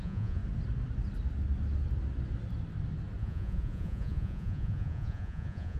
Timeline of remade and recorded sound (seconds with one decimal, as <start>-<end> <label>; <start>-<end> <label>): 0.0-0.4 remade; 0.4-3.2 recorded; 3.2-5.8 remade